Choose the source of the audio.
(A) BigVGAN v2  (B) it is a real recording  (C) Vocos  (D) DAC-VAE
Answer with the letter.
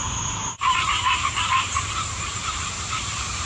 A